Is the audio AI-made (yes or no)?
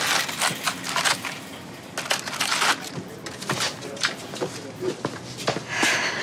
no